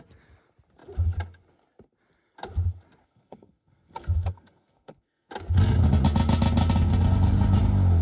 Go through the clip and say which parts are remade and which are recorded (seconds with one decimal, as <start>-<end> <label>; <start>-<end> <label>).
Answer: 0.0-3.0 recorded; 3.0-5.3 remade; 5.3-8.0 recorded